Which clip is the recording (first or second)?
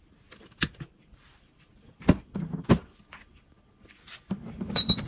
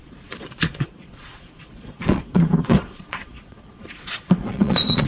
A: first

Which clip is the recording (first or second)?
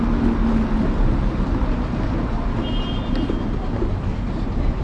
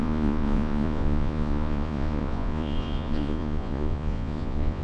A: first